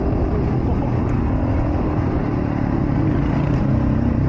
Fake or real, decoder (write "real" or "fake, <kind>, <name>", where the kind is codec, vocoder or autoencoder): real